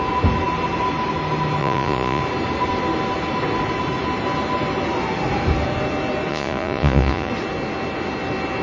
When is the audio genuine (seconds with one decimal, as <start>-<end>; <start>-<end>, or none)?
0.0-1.6; 2.2-6.3; 7.3-8.6